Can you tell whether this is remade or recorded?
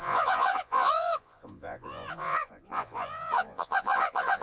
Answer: remade